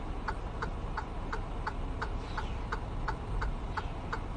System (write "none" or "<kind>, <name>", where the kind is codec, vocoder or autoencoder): none